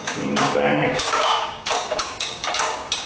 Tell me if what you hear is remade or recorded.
remade